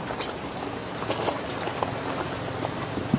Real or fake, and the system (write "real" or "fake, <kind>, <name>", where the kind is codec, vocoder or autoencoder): real